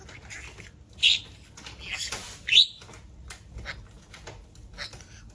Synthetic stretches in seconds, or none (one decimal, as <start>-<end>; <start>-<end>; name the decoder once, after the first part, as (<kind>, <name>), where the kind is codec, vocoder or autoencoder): 2.2-2.8 (vocoder, BigVGAN v2)